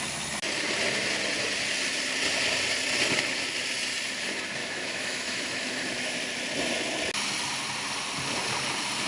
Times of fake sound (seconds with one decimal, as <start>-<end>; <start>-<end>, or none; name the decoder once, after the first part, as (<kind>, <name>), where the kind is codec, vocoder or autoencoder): 4.6-6.1 (autoencoder, DAC-VAE)

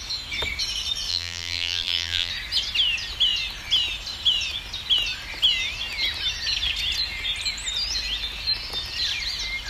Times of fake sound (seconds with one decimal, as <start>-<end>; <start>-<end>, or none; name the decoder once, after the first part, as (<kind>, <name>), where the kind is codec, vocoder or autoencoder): 1.1-2.3 (vocoder, BigVGAN v2)